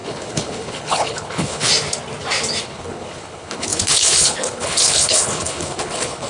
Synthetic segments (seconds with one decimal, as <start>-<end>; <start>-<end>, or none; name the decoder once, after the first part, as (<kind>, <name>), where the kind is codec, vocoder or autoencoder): 0.0-1.7 (codec, HILCodec); 2.6-6.3